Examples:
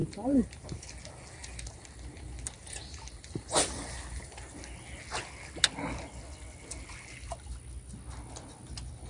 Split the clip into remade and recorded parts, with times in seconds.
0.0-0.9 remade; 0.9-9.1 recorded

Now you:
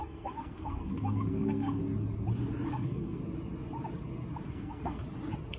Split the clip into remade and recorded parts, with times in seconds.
0.0-1.8 remade; 1.8-2.7 recorded; 2.7-3.2 remade; 3.2-4.5 recorded; 4.5-5.0 remade; 5.0-5.6 recorded